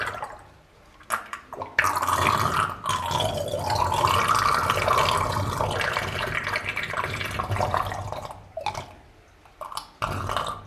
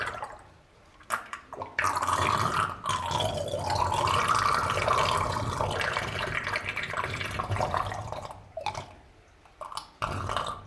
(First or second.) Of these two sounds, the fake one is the second